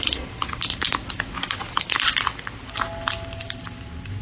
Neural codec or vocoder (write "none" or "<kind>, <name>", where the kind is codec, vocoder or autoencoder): none